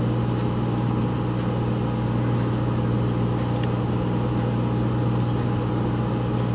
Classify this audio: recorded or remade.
recorded